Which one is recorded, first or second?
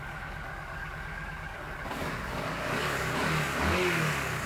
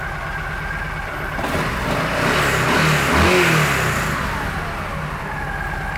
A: second